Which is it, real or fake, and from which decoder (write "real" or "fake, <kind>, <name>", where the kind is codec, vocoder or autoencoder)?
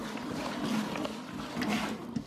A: real